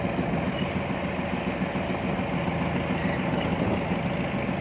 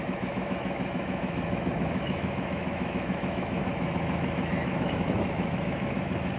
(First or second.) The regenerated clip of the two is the second